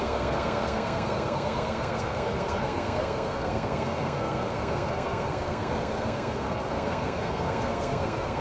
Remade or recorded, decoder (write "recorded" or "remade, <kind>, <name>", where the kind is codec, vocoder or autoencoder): remade, codec, SNAC